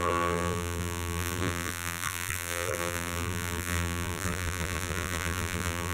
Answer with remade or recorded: remade